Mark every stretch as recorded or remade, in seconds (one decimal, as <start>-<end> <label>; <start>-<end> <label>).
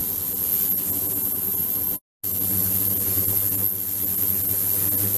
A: 0.0-5.2 recorded